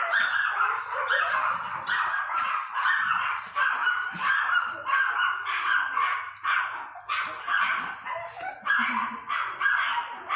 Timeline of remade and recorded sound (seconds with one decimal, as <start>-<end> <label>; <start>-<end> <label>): 0.0-0.4 recorded; 0.4-1.3 remade; 1.3-2.8 recorded; 2.8-3.4 remade; 3.4-3.8 recorded; 3.8-4.6 remade; 4.6-7.7 recorded; 7.7-8.7 remade; 8.7-10.4 recorded